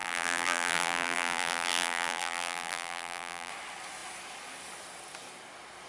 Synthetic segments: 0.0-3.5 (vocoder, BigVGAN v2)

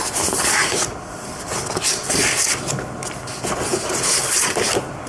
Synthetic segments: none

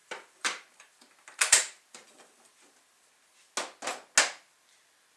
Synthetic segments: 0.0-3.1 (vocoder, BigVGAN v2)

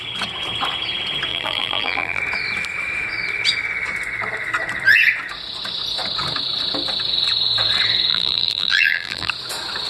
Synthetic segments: 1.3-2.2 (vocoder, BigVGAN v2); 8.1-9.3

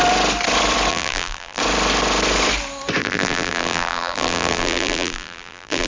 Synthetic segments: 0.9-1.6 (vocoder, BigVGAN v2); 3.0-5.9